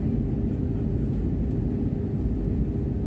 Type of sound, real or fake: real